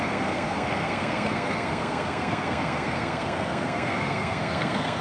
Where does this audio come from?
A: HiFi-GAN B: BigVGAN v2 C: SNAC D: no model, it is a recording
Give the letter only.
C